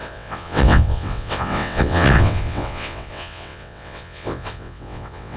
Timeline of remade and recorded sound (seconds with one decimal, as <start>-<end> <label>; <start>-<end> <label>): 0.0-5.4 remade